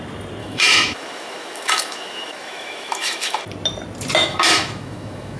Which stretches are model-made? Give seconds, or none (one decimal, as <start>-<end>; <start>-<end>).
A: 0.4-3.4; 4.2-5.4